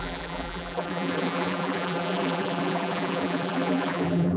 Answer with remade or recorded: remade